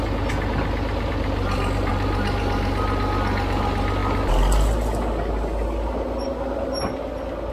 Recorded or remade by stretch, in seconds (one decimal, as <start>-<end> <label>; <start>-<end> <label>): 0.0-7.5 recorded